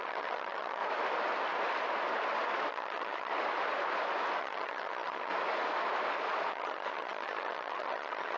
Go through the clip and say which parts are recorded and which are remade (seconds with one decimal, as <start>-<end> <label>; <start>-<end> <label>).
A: 0.0-0.8 remade; 0.8-2.7 recorded; 2.7-3.3 remade; 3.3-4.4 recorded; 4.4-5.3 remade; 5.3-6.5 recorded; 6.5-8.4 remade